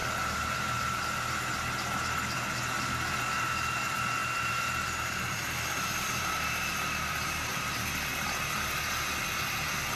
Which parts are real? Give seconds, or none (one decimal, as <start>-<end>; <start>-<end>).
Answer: 1.0-4.2; 7.6-10.0